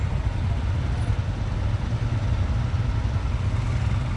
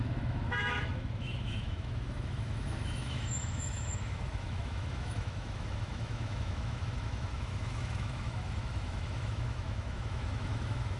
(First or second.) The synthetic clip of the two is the second